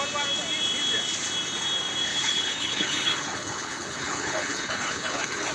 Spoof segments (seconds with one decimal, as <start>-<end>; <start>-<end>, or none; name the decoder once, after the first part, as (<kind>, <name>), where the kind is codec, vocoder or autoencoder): 2.1-5.5 (codec, HILCodec)